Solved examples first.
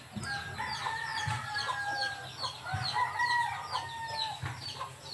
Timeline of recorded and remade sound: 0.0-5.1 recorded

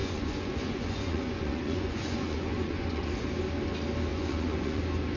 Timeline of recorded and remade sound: 0.0-3.1 remade; 3.1-4.1 recorded; 4.1-4.8 remade; 4.8-5.2 recorded

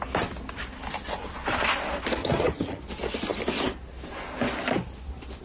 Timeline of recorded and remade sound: 0.0-2.2 recorded; 2.2-2.8 remade; 2.8-5.4 recorded

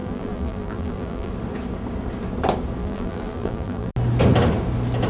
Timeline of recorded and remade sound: 0.0-1.3 remade; 1.3-2.8 recorded; 2.8-3.9 remade; 3.9-5.1 recorded

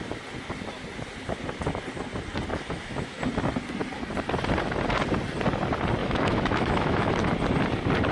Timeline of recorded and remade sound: 0.0-2.5 recorded; 2.5-3.2 remade; 3.2-6.0 recorded; 6.0-7.1 remade; 7.1-8.1 recorded

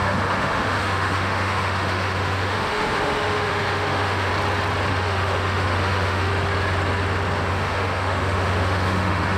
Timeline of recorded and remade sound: 0.0-4.3 remade; 4.3-4.9 recorded; 4.9-6.3 remade; 6.3-7.5 recorded; 7.5-9.4 remade